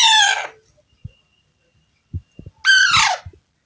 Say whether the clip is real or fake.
real